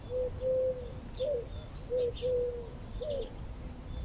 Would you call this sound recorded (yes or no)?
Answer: yes